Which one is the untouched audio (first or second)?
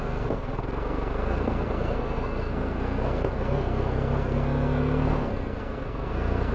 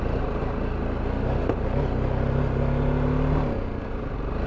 second